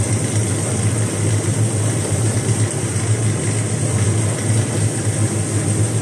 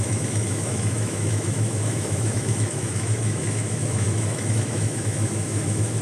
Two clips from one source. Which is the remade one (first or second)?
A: second